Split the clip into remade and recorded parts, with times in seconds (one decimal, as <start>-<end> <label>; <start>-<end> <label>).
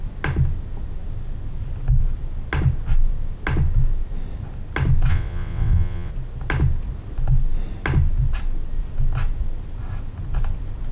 0.0-5.1 recorded; 5.1-6.1 remade; 6.1-10.9 recorded